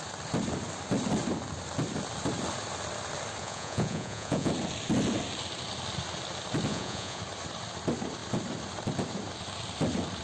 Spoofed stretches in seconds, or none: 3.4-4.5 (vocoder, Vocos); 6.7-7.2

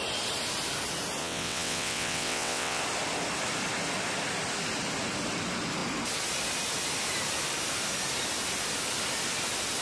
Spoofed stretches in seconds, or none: 1.2-2.8 (vocoder, WaveNeXt)

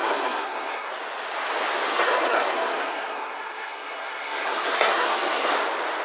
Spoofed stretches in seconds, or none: 0.0-0.9 (codec, SNAC); 1.9-5.5

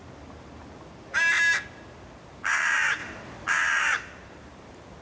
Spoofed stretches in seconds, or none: 0.0-0.6 (vocoder, BigVGAN v2); 1.9-5.0